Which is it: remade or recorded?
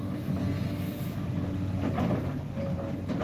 recorded